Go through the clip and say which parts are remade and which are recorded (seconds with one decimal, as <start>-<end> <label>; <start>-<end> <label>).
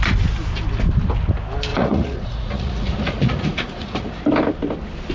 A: 0.0-1.7 recorded; 1.7-4.2 remade; 4.2-5.1 recorded